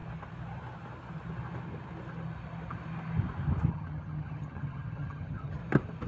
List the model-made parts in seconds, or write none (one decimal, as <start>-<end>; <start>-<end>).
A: 3.7-5.6